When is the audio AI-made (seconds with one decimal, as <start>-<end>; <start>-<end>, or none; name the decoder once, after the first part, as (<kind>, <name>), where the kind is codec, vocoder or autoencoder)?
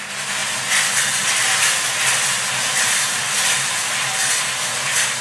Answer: none